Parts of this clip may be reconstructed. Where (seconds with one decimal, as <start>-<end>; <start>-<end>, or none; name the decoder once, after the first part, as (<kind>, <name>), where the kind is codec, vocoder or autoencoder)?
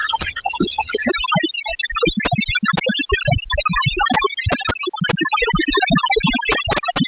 0.0-1.1 (vocoder, HiFi-GAN)